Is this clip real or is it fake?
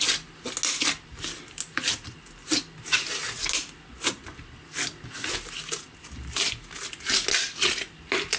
real